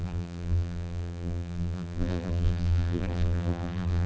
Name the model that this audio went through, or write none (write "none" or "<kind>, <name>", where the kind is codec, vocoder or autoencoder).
vocoder, BigVGAN v2